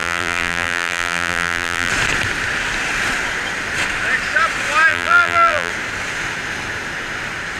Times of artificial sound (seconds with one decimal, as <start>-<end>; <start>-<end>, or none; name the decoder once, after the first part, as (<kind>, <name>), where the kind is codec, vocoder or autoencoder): 0.0-1.9 (vocoder, BigVGAN v2); 4.9-5.7